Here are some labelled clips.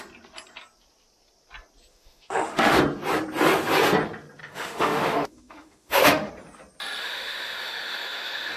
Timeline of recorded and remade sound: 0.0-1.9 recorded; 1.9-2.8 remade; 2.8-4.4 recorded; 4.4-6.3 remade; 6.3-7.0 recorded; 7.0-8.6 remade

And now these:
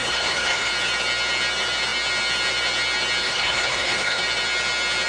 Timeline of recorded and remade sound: 0.0-0.7 remade; 0.7-3.2 recorded; 3.2-4.2 remade; 4.2-5.1 recorded